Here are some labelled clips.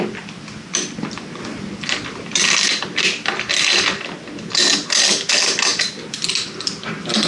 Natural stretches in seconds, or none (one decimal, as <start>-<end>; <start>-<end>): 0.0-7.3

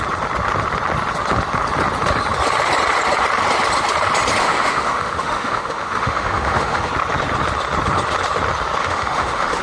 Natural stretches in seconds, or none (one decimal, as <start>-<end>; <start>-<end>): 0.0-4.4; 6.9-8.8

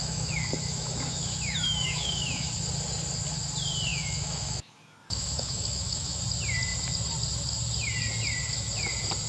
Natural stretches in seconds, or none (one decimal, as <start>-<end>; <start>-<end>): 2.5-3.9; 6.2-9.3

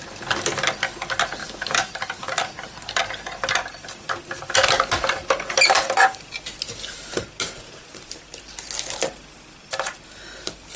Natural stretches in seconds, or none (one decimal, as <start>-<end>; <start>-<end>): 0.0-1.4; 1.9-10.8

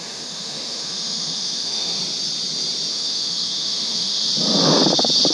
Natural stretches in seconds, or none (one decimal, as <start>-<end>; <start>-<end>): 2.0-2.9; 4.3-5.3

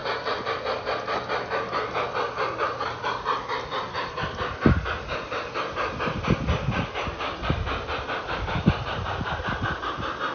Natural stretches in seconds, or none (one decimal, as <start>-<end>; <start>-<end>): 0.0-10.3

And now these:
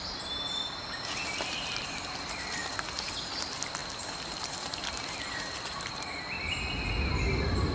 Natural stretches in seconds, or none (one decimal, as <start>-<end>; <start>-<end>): 0.0-7.7

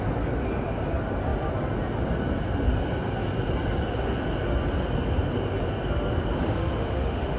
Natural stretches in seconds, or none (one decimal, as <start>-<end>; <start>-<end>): 0.0-6.4